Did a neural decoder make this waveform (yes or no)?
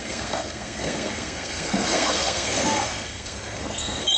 yes